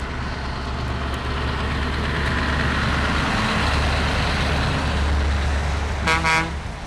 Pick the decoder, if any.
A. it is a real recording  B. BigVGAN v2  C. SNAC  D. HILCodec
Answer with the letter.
A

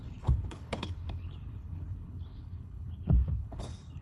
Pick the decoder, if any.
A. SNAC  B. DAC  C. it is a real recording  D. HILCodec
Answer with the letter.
D